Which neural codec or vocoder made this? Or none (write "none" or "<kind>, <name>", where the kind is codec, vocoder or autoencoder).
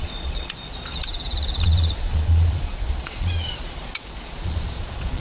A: vocoder, Vocos